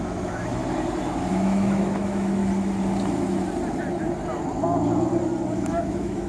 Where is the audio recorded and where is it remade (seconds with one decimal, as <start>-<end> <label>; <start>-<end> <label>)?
0.0-0.6 remade; 0.6-1.3 recorded; 1.3-2.4 remade; 2.4-5.5 recorded; 5.5-6.3 remade